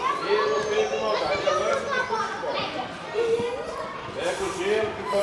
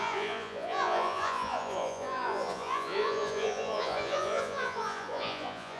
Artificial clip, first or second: second